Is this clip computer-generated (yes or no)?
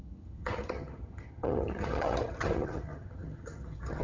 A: yes